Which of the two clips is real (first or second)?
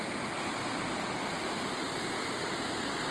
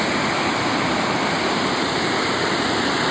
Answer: first